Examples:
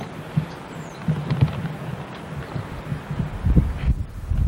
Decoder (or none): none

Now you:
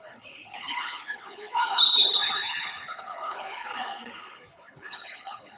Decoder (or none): codec, HILCodec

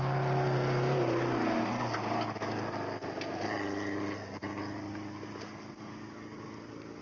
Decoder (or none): none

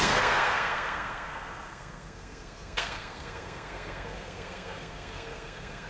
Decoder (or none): codec, SNAC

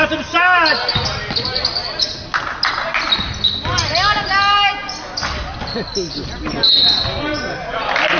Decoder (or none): none